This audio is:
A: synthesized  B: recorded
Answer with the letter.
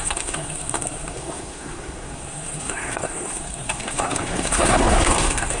A